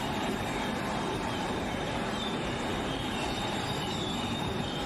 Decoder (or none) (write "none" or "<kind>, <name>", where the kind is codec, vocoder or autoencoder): vocoder, BigVGAN v2